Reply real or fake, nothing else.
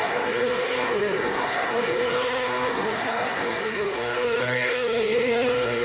fake